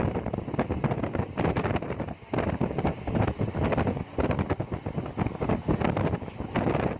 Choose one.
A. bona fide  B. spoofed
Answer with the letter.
A